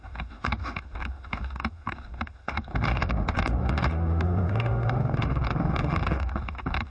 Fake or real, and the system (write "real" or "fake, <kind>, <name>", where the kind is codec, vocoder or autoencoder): fake, autoencoder, DAC-VAE